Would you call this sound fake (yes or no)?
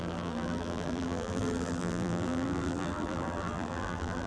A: yes